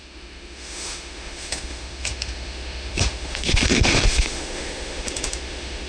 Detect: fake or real fake